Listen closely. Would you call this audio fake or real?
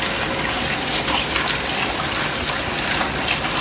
real